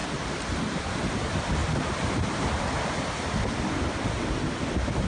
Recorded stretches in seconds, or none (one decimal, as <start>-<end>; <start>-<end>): 0.0-5.1